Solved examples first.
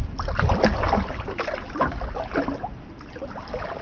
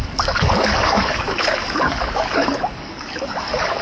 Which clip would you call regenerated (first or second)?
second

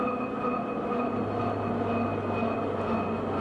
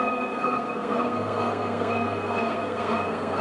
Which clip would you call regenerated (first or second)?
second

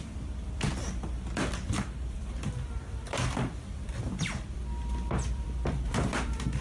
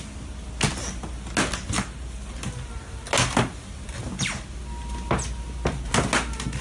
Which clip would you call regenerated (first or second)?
first